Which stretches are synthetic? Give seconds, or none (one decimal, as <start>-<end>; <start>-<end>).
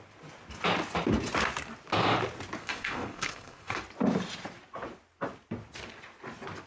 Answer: 2.6-3.8